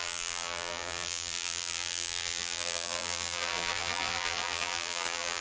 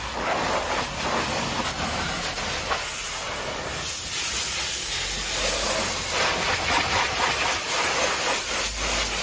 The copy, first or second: first